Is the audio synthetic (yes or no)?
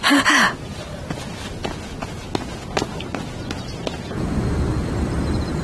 no